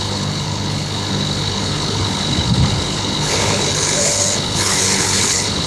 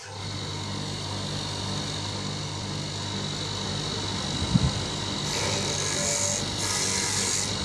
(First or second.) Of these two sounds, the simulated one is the first